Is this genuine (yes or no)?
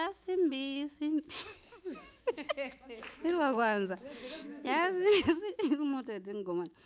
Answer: no